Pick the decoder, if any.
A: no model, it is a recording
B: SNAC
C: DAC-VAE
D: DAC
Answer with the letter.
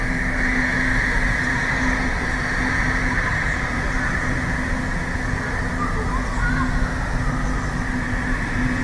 A